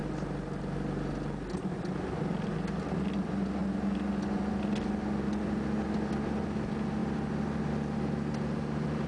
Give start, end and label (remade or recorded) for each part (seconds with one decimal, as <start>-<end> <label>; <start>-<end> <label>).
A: 0.0-9.1 recorded